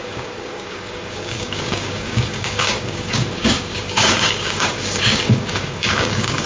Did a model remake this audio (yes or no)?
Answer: yes